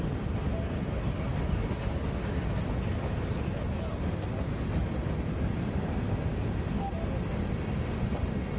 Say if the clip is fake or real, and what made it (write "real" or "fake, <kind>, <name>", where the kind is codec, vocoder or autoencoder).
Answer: real